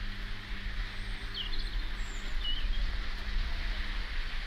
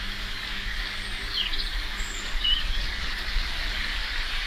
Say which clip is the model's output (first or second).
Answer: second